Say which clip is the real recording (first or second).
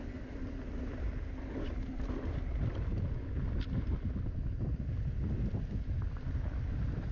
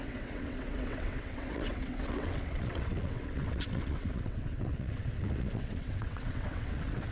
first